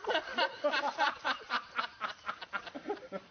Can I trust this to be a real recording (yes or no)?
yes